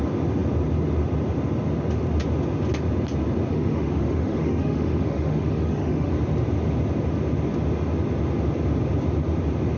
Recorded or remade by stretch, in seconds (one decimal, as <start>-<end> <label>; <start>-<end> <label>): 0.0-3.5 recorded; 3.5-6.1 remade; 6.1-9.8 recorded